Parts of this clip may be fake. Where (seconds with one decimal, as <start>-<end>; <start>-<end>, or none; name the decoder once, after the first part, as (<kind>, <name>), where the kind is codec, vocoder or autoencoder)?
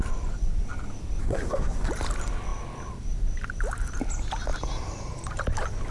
1.2-1.9 (codec, SNAC)